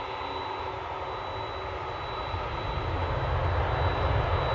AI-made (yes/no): no